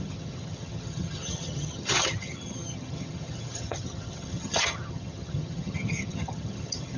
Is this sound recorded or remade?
remade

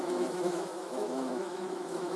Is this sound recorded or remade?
remade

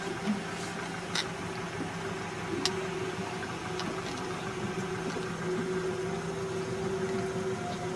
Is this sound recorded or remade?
recorded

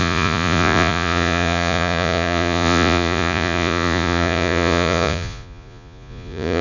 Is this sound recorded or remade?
remade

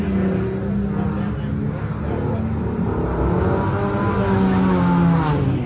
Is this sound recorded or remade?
recorded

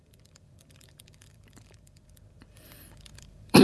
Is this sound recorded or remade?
remade